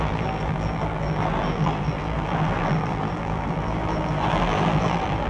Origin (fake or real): fake